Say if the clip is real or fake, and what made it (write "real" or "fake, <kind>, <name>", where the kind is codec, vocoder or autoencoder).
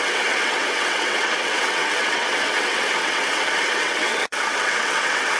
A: fake, vocoder, WaveNeXt